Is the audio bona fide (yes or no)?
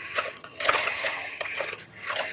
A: no